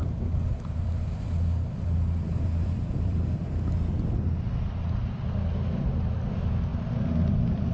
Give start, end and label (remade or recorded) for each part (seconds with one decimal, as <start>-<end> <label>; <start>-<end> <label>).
0.0-0.5 recorded; 0.5-3.5 remade; 3.5-6.7 recorded; 6.7-7.7 remade